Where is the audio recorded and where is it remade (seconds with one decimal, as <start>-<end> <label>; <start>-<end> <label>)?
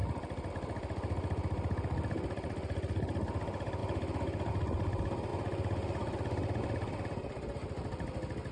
0.0-8.5 recorded